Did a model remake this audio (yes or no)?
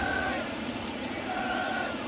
yes